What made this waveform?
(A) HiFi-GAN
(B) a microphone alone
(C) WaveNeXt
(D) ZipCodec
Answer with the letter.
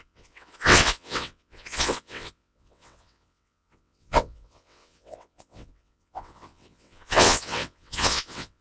C